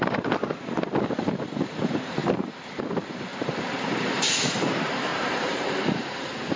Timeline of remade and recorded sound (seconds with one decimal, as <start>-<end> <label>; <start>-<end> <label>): 0.0-6.6 remade